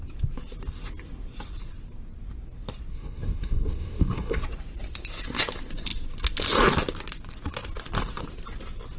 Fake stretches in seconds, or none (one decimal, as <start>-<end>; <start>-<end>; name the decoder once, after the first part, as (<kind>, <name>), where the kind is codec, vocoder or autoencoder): 2.9-4.4 (codec, SNAC)